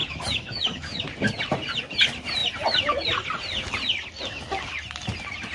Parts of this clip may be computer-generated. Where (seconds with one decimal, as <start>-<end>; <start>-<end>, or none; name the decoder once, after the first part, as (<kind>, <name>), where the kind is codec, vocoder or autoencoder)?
0.0-1.0 (autoencoder, DAC-VAE)